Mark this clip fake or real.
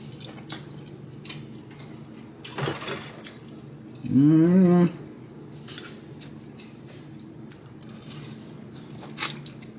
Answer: real